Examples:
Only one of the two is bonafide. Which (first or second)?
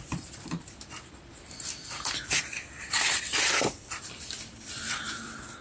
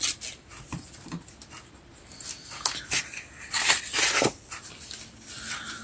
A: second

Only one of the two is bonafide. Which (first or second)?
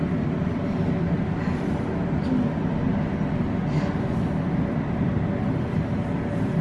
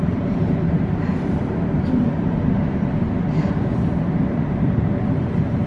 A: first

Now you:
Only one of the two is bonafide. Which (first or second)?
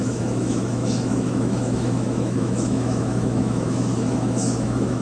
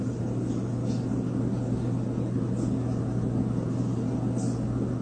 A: second